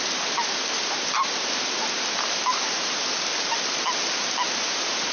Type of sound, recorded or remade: recorded